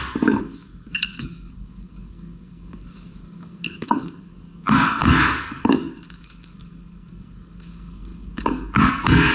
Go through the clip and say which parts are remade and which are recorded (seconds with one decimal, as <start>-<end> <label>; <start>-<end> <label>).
0.0-9.3 remade